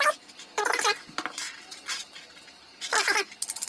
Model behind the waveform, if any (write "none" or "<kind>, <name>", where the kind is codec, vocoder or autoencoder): none